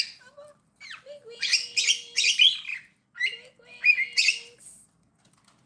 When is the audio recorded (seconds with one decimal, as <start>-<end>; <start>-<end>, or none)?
0.0-5.7